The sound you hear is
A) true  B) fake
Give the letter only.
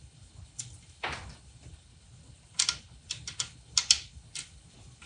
A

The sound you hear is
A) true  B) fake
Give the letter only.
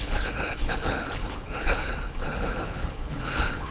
B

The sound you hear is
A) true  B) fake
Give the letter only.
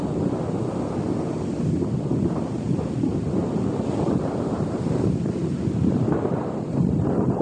A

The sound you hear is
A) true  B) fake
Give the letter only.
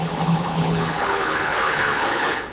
B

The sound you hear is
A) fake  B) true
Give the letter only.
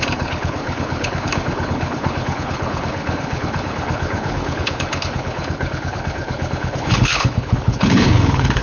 A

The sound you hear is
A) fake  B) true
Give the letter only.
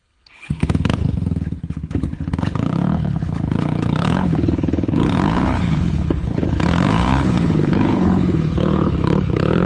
A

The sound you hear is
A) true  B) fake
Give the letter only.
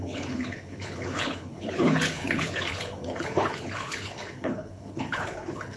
B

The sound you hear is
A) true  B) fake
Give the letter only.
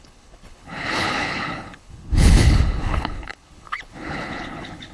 B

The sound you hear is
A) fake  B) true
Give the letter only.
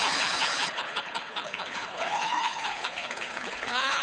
A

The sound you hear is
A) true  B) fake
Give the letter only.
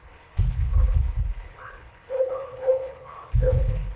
B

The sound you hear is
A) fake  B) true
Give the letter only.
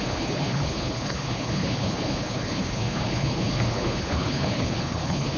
A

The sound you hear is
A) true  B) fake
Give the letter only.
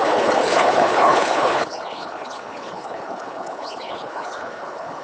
B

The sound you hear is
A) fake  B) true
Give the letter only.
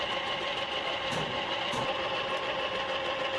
B